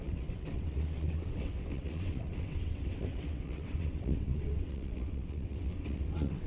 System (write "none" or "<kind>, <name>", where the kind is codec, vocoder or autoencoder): vocoder, WaveNeXt